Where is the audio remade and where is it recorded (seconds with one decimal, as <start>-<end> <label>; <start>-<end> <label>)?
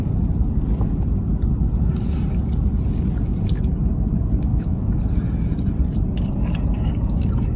0.0-4.5 recorded; 4.5-5.0 remade; 5.0-7.6 recorded